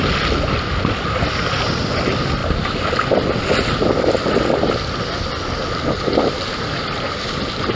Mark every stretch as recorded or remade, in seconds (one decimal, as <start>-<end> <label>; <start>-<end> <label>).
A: 0.0-7.8 recorded